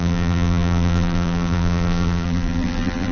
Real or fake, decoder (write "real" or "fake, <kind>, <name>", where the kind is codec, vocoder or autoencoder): fake, vocoder, BigVGAN v2